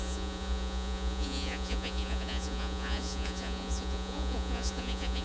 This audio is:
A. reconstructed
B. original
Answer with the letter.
A